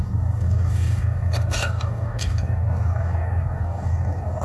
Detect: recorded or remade remade